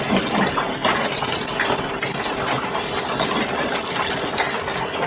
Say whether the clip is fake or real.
real